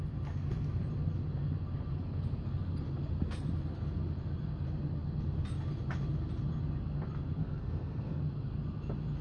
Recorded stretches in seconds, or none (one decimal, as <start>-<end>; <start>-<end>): 0.0-7.4; 8.2-9.2